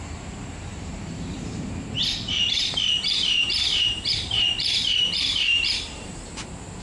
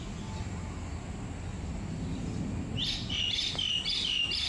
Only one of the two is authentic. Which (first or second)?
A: second